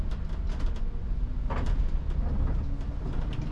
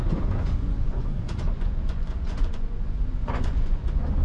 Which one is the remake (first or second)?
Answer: second